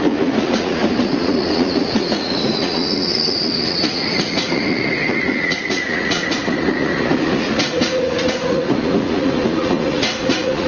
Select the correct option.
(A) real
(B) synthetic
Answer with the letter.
B